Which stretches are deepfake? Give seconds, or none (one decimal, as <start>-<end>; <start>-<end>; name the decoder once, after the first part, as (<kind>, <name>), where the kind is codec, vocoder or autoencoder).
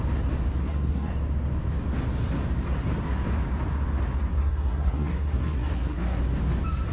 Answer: 0.5-1.1 (codec, SNAC); 4.3-6.2